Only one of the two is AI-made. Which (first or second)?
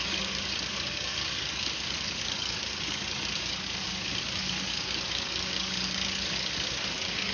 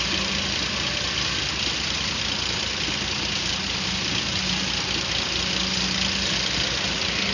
first